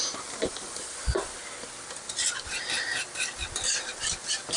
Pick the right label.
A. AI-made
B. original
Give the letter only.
B